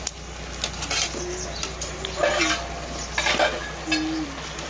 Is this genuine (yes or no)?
yes